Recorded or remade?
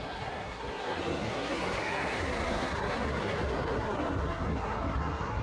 remade